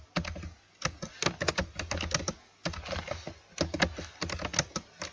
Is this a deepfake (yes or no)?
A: no